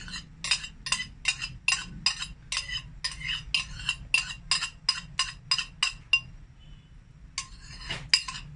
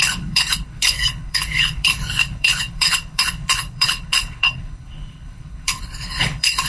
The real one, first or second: first